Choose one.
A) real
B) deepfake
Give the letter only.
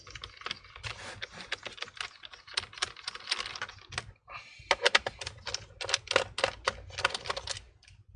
A